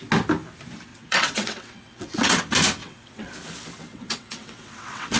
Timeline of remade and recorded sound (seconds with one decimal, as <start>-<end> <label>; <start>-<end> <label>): 0.0-0.9 recorded; 0.9-2.4 remade; 2.4-2.8 recorded; 2.8-3.3 remade; 3.3-3.9 recorded; 3.9-5.2 remade